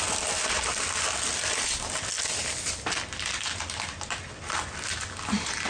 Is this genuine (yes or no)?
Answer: yes